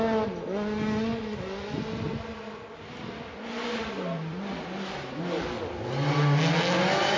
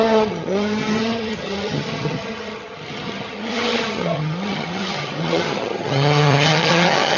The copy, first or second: second